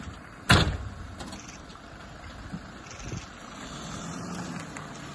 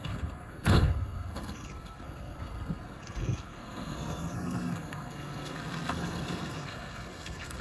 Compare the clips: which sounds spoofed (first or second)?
second